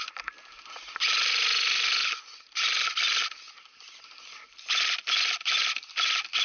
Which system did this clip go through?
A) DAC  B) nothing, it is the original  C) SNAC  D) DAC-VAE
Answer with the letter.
B